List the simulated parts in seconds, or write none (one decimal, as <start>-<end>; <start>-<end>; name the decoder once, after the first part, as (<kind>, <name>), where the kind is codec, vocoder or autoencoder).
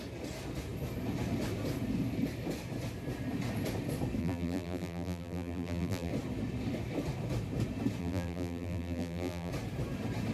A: 4.2-6.1 (vocoder, BigVGAN v2); 8.0-9.5